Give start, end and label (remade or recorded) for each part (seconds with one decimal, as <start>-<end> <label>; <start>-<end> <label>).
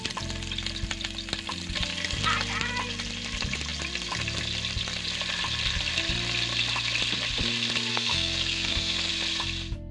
0.0-7.9 recorded; 7.9-9.1 remade; 9.1-9.9 recorded